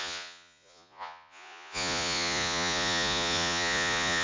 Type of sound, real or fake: fake